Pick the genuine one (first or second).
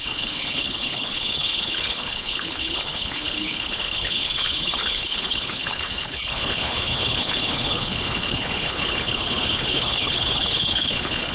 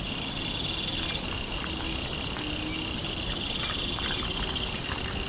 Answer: second